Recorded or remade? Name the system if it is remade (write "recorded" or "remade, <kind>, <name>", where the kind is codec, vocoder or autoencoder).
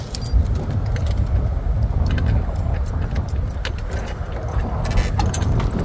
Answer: recorded